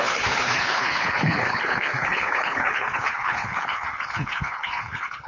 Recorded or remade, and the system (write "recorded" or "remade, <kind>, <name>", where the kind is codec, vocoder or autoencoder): remade, codec, HILCodec